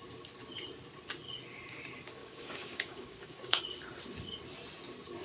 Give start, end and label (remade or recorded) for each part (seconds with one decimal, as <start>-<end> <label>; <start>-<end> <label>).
0.0-2.2 recorded; 2.2-3.6 remade; 3.6-5.2 recorded